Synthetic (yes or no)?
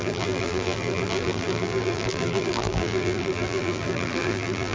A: yes